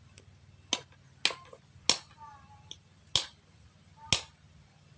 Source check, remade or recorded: recorded